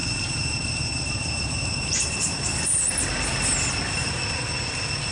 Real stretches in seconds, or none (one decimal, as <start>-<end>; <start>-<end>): 3.1-5.1